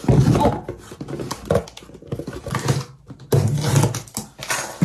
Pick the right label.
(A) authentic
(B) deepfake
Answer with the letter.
A